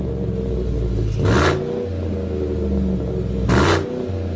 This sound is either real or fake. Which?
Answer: real